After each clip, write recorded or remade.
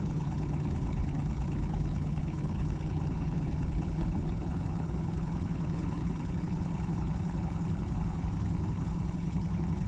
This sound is remade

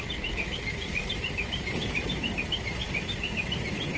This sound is remade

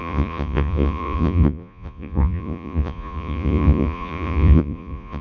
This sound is remade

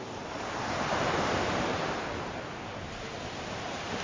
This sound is recorded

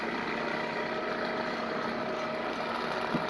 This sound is recorded